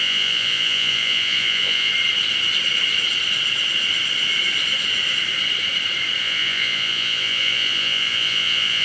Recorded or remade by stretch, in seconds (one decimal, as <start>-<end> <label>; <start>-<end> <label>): 0.0-1.9 remade; 1.9-6.2 recorded; 6.2-8.8 remade